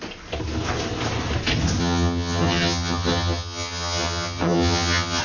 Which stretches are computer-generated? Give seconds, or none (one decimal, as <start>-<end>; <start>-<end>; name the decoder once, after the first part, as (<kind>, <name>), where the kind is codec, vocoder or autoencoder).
1.8-5.2 (vocoder, HiFi-GAN)